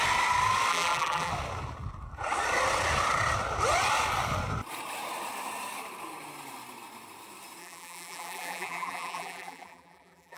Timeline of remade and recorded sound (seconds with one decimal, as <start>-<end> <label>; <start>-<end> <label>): 0.0-0.7 recorded; 0.7-1.3 remade; 1.3-7.6 recorded; 7.6-10.4 remade